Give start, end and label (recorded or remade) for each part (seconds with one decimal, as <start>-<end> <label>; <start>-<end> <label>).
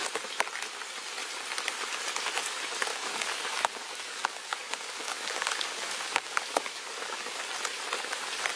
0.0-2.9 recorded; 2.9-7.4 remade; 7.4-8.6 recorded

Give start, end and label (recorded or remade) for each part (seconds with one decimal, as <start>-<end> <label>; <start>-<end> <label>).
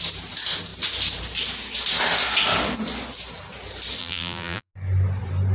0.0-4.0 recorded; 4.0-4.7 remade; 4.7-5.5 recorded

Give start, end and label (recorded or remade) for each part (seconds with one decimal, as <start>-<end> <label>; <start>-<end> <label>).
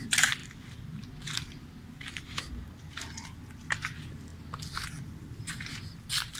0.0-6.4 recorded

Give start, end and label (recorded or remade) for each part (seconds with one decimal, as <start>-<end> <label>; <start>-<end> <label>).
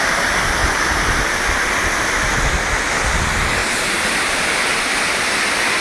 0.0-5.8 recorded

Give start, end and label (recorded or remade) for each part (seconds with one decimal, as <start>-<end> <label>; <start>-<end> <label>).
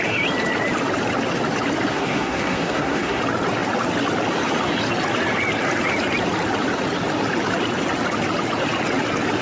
0.0-1.9 recorded; 1.9-3.2 remade; 3.2-9.4 recorded